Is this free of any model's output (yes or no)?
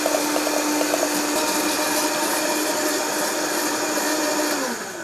yes